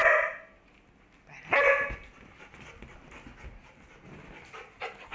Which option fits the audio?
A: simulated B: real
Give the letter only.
B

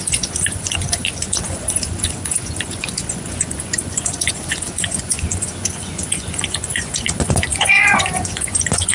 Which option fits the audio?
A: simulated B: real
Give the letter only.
A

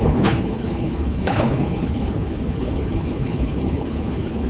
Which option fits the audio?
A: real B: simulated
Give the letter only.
B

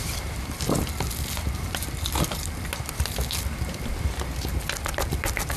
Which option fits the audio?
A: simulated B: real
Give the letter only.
A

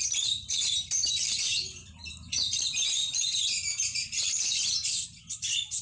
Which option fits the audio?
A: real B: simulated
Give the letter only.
B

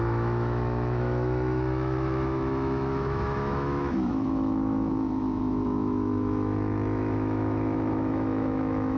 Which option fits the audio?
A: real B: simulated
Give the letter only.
B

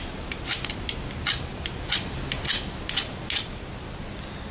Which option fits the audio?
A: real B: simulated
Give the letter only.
A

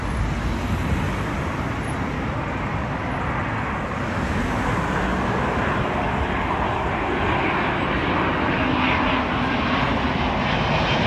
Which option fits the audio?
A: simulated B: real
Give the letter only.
B